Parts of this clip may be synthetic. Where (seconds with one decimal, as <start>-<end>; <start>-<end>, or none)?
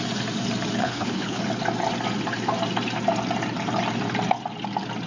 0.8-1.4